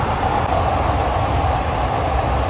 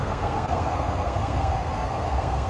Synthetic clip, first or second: second